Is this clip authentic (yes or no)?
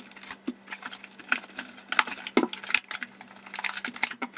yes